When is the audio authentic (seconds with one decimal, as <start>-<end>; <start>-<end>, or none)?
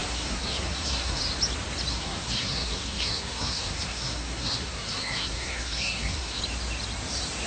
1.2-1.9; 6.4-7.5